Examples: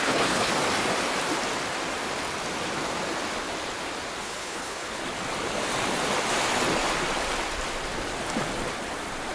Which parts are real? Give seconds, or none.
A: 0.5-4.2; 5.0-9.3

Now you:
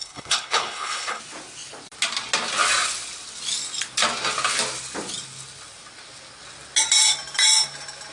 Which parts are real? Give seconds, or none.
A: 1.2-8.1

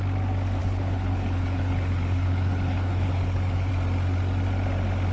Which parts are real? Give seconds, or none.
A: 0.0-0.6; 3.7-5.1

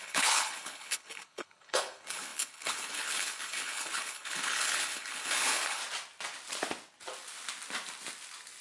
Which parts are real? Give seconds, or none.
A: 5.8-8.6

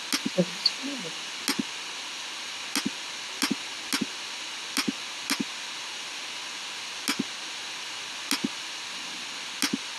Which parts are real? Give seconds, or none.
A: 0.0-10.0